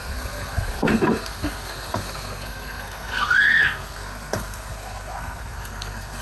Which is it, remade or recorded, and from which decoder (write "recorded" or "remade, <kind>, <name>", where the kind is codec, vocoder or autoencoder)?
remade, codec, SNAC